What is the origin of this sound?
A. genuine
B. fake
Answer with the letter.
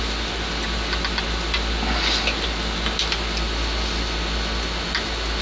A